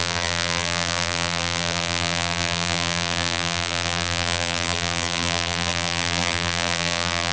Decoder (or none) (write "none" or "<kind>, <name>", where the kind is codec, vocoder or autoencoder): vocoder, BigVGAN v2